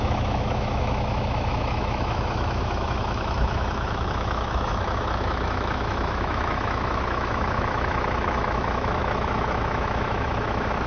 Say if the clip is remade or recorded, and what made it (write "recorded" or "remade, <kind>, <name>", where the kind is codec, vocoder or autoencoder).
remade, autoencoder, DAC-VAE